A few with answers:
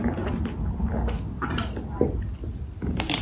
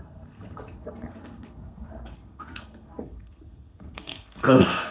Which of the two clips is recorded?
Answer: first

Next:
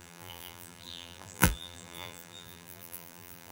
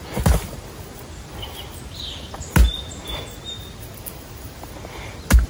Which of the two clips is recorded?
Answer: second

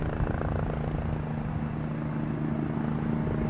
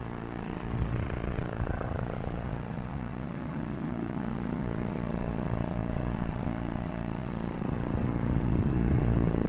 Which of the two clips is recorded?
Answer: first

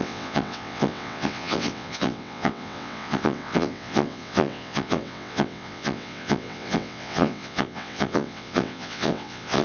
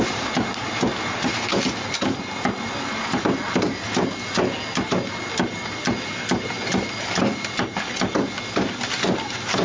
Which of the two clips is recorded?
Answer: second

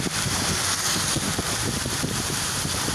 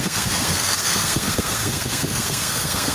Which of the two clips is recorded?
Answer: first